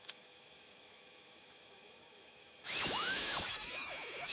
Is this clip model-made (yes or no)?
yes